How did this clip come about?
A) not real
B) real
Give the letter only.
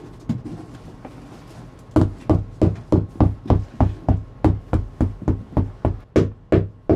B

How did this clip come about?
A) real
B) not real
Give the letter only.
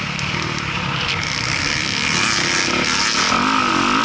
A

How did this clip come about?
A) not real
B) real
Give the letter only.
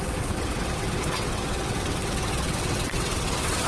A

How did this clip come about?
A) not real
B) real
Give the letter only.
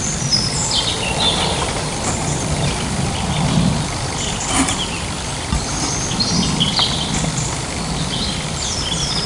B